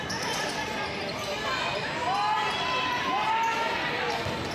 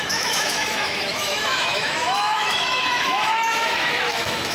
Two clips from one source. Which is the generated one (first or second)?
second